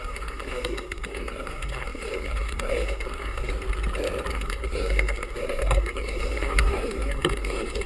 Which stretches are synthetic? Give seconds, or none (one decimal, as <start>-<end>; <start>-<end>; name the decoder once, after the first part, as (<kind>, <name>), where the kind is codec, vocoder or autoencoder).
0.0-3.5 (codec, SNAC); 4.3-7.9